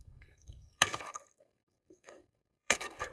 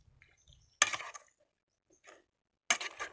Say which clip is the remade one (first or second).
first